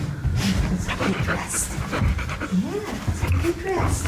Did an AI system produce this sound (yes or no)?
no